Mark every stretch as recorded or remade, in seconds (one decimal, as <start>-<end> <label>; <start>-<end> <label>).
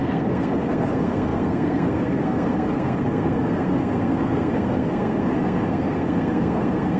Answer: 0.0-7.0 remade